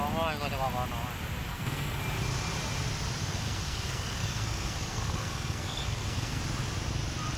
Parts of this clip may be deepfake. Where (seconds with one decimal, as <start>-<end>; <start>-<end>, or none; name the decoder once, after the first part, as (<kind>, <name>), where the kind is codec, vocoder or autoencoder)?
1.5-2.0 (codec, SNAC); 3.2-6.4